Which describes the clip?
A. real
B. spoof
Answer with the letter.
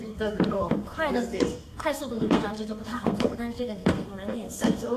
B